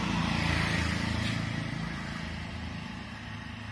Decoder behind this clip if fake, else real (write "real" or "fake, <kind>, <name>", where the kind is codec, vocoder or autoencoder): real